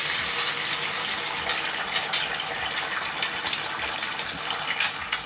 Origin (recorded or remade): recorded